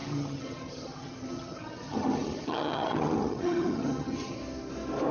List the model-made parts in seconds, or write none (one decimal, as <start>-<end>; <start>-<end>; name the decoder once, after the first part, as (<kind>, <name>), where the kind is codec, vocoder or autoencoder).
0.0-4.4 (vocoder, HiFi-GAN)